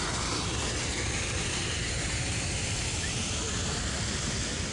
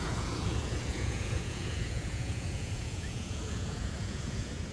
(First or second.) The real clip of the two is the first